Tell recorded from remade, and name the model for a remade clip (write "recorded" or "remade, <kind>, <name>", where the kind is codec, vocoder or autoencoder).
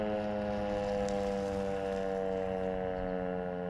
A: recorded